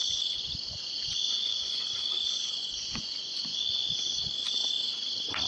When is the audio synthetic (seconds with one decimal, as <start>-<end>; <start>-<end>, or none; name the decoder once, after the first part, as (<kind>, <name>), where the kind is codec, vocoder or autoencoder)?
0.0-4.6 (vocoder, Vocos)